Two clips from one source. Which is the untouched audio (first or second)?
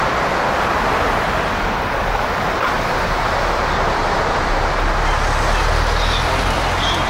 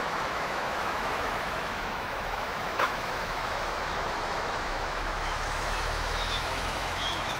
first